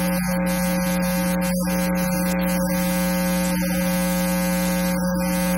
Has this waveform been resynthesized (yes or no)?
no